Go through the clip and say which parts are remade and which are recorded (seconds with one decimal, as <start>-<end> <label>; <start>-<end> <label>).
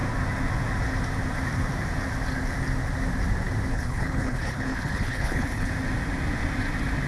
0.0-3.7 recorded; 3.7-5.7 remade; 5.7-7.1 recorded